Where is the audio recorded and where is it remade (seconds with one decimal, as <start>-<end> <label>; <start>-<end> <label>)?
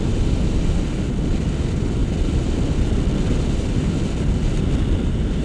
0.0-5.4 recorded